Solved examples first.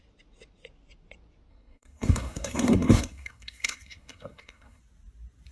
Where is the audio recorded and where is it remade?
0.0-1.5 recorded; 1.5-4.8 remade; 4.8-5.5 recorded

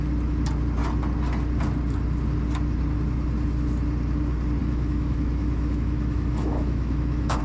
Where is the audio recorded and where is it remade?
0.0-4.6 recorded; 4.6-7.4 remade

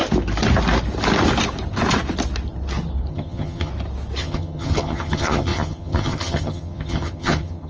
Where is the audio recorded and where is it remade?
0.0-3.1 recorded; 3.1-3.7 remade; 3.7-4.2 recorded; 4.2-7.7 remade

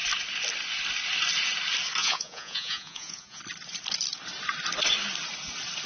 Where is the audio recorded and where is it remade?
0.0-2.0 recorded; 2.0-3.4 remade; 3.4-5.9 recorded